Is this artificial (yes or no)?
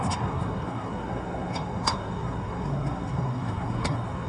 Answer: yes